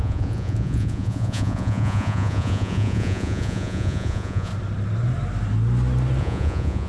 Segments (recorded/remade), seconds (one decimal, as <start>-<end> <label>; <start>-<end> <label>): 0.0-4.5 remade; 4.5-6.2 recorded; 6.2-6.9 remade